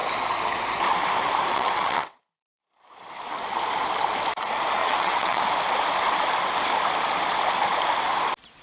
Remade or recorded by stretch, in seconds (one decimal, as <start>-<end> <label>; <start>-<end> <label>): 0.0-1.5 recorded; 1.5-2.2 remade; 2.2-4.8 recorded; 4.8-5.4 remade; 5.4-8.6 recorded